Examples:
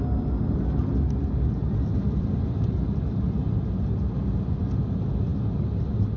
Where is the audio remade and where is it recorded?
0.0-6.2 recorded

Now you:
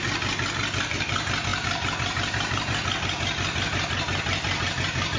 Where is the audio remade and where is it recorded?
0.0-5.2 recorded

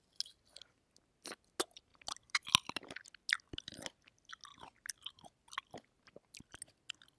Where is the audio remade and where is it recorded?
0.0-1.9 recorded; 1.9-2.5 remade; 2.5-7.2 recorded

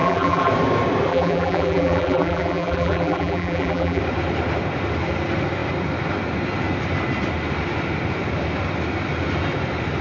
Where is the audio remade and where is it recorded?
0.0-0.5 remade; 0.5-1.1 recorded; 1.1-4.0 remade; 4.0-10.0 recorded

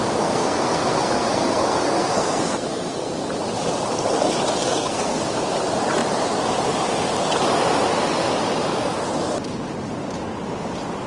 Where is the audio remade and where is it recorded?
0.0-3.1 remade; 3.1-4.6 recorded; 4.6-5.3 remade; 5.3-11.1 recorded